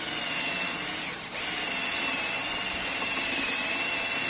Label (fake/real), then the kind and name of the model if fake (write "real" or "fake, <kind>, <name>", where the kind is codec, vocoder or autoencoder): real